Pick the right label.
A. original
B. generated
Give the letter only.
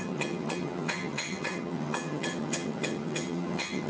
B